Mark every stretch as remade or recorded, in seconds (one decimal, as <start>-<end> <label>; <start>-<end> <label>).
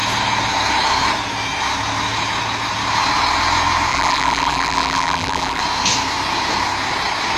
0.0-3.9 recorded; 3.9-5.6 remade; 5.6-7.4 recorded